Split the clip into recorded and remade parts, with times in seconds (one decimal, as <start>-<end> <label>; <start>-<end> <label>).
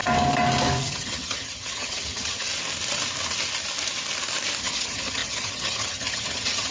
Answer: 0.0-0.8 recorded; 0.8-2.5 remade; 2.5-4.6 recorded; 4.6-6.7 remade